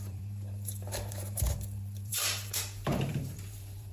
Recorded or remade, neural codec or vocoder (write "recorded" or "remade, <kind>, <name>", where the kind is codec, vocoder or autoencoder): remade, vocoder, BigVGAN v2